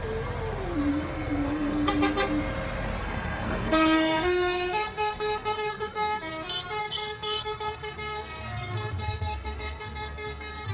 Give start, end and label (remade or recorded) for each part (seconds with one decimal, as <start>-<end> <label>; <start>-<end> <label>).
0.0-0.9 recorded; 0.9-1.9 remade; 1.9-3.0 recorded; 3.0-6.3 remade; 6.3-6.8 recorded; 6.8-10.7 remade